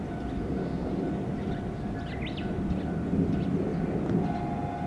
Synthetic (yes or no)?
no